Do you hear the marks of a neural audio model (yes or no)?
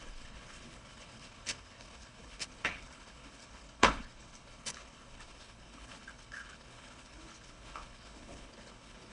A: yes